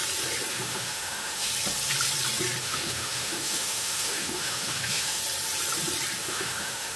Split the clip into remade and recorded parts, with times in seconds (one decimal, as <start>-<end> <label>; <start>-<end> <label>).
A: 0.0-0.5 recorded; 0.5-1.5 remade; 1.5-2.6 recorded; 2.6-5.2 remade; 5.2-6.2 recorded; 6.2-7.0 remade